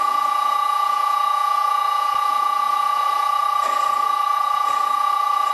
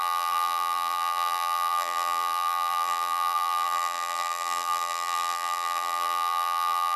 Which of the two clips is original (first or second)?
first